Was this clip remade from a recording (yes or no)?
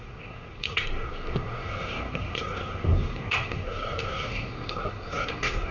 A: yes